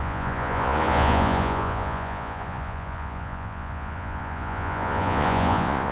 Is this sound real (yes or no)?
no